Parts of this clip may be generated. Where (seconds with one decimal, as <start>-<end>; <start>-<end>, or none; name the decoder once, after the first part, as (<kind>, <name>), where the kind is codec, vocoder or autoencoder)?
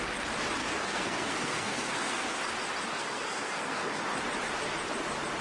0.6-2.4 (codec, SNAC); 2.9-4.0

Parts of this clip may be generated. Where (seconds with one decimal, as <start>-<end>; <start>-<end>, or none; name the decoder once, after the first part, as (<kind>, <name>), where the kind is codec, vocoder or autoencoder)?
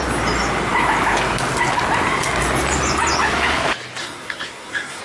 4.0-5.0 (codec, SNAC)